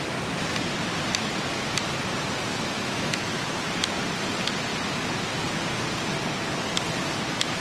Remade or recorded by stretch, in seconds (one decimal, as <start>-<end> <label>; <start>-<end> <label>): 0.0-2.5 recorded; 2.5-3.5 remade; 3.5-7.6 recorded